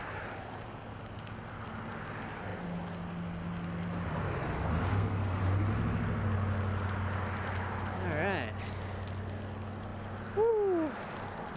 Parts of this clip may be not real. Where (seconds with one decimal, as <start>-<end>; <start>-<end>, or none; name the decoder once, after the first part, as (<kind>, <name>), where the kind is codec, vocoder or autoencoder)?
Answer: 4.9-5.4 (codec, SNAC)